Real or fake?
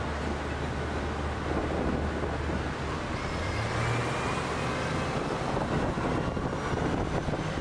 real